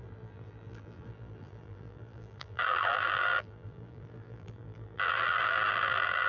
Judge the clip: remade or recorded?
remade